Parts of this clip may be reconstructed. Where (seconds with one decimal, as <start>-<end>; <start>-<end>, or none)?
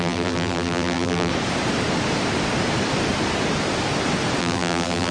0.0-1.3; 4.4-5.1